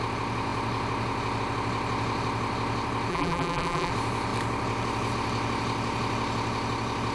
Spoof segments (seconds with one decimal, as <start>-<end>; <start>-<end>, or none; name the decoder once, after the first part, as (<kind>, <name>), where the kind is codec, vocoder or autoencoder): 3.1-3.9 (vocoder, BigVGAN v2)